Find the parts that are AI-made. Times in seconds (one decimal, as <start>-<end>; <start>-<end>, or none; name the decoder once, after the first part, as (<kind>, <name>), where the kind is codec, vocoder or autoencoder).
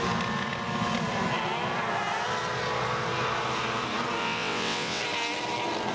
4.2-5.0 (vocoder, WaveNeXt)